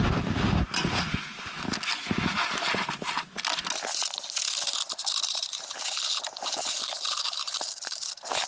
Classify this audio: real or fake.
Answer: real